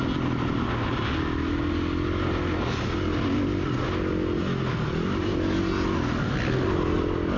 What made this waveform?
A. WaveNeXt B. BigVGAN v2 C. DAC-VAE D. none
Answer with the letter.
D